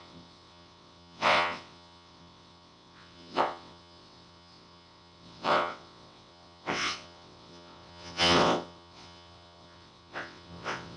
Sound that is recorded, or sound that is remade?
remade